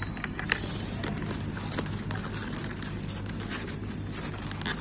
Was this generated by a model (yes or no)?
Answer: no